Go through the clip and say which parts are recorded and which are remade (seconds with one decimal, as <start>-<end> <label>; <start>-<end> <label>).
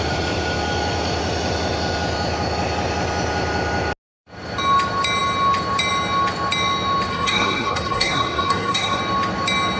0.0-7.1 recorded; 7.1-9.0 remade; 9.0-9.8 recorded